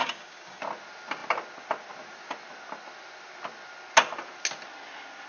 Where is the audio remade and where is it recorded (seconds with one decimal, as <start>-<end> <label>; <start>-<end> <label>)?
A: 0.0-0.6 remade; 0.6-5.3 recorded